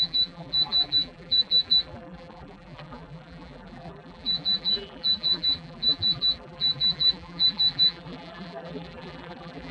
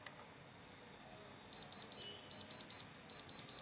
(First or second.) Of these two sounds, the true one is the second